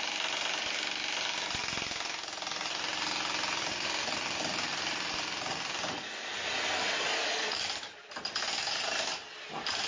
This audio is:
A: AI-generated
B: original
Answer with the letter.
B